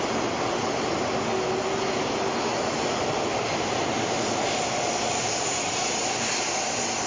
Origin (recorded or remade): recorded